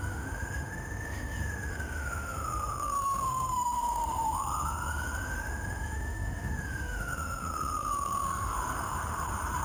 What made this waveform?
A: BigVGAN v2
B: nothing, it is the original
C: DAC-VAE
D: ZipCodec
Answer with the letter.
C